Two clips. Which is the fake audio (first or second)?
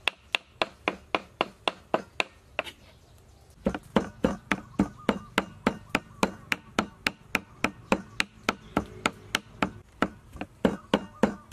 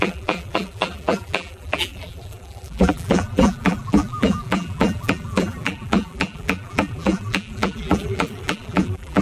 second